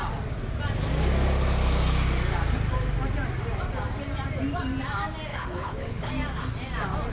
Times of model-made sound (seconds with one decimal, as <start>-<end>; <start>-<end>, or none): 5.3-6.1